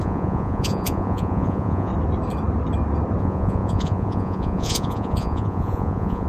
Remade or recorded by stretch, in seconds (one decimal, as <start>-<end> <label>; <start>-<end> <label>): 0.0-1.9 remade; 1.9-3.2 recorded; 3.2-6.3 remade